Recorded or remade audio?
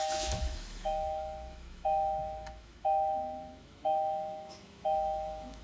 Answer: remade